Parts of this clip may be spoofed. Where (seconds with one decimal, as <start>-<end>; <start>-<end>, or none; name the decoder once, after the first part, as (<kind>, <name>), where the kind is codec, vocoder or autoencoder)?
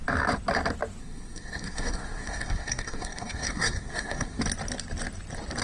1.0-4.4 (codec, SNAC)